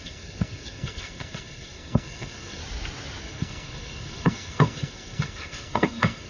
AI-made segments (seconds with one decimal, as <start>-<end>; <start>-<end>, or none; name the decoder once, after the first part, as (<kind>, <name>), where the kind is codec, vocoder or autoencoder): 0.0-2.6 (codec, SNAC); 3.2-6.3